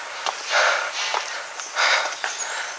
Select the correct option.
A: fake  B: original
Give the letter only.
B